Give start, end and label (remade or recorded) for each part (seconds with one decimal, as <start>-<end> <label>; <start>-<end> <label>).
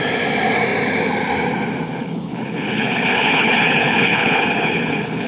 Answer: 0.0-2.0 recorded; 2.0-5.3 remade